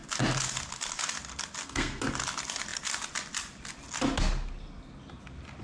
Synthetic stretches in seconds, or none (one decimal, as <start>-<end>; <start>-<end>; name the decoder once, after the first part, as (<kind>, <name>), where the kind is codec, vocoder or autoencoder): 1.6-2.1 (codec, SNAC)